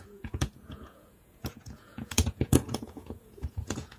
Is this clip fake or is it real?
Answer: fake